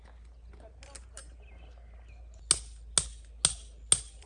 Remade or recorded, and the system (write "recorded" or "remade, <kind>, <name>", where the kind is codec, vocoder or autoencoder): recorded